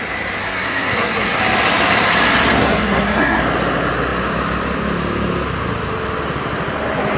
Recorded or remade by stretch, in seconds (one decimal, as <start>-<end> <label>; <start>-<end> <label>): 0.0-0.4 recorded; 0.4-1.4 remade; 1.4-2.6 recorded; 2.6-3.4 remade; 3.4-7.2 recorded

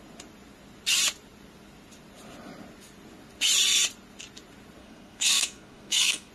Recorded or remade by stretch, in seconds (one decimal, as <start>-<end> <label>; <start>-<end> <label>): 0.0-4.8 recorded; 4.8-6.3 remade